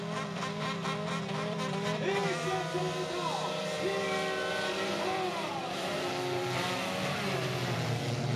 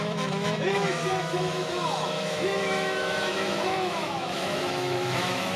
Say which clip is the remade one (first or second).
second